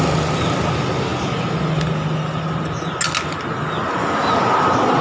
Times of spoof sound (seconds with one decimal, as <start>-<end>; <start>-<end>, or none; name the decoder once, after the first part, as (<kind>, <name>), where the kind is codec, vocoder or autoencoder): none